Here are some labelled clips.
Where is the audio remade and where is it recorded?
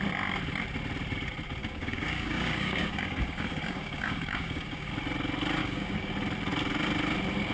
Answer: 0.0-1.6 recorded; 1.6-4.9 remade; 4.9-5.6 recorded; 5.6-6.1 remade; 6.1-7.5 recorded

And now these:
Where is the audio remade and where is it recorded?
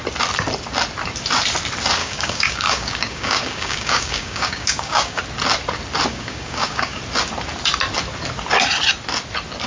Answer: 0.0-2.0 recorded; 2.0-5.2 remade; 5.2-6.1 recorded; 6.1-7.0 remade; 7.0-9.7 recorded